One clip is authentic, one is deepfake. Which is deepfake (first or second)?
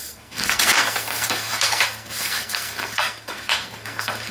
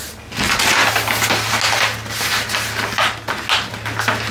first